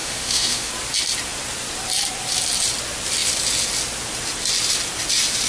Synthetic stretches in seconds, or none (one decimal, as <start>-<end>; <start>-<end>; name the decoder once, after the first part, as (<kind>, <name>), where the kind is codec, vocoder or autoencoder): 0.0-0.7 (autoencoder, DAC-VAE)